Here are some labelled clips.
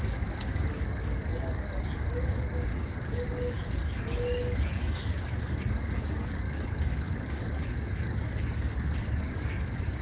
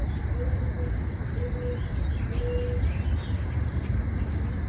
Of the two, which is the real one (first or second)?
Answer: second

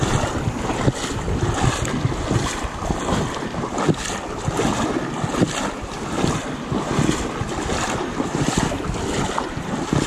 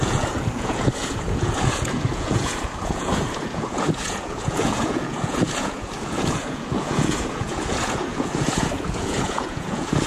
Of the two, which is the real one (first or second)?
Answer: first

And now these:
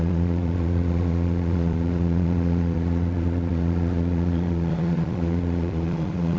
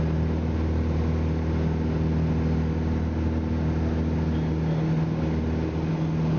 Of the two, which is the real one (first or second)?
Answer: second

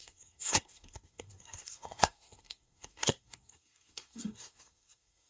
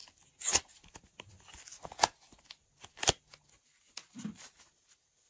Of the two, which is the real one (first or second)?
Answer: second